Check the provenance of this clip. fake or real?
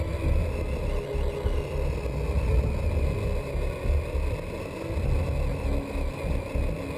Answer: real